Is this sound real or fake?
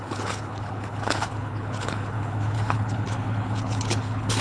fake